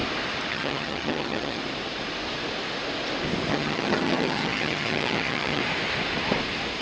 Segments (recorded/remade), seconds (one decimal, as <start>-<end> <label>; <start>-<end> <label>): 0.0-0.5 recorded; 0.5-1.6 remade; 1.6-3.5 recorded; 3.5-5.6 remade; 5.6-6.8 recorded